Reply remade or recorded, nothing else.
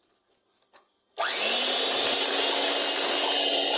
recorded